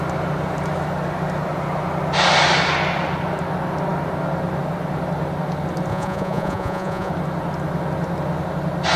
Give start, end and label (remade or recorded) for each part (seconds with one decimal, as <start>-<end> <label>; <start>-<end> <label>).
0.0-5.9 recorded; 5.9-7.1 remade; 7.1-9.0 recorded